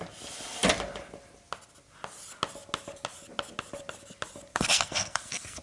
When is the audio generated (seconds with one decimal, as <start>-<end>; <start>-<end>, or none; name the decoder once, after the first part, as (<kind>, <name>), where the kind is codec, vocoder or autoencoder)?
4.5-5.6 (codec, SNAC)